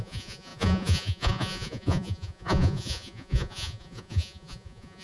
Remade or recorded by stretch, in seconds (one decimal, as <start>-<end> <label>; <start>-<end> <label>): 0.0-5.0 remade